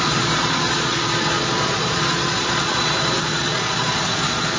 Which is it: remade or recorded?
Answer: remade